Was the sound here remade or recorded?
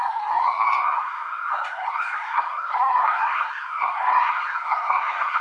remade